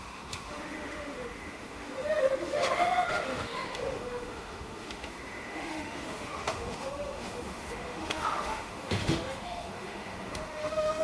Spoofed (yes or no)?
yes